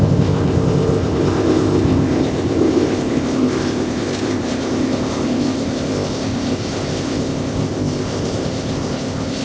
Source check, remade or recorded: remade